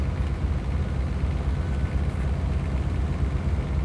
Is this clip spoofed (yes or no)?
no